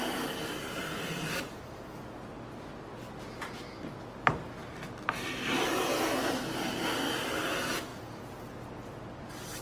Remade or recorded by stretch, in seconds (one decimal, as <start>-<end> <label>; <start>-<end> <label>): 0.0-7.9 recorded; 7.9-8.5 remade; 8.5-9.6 recorded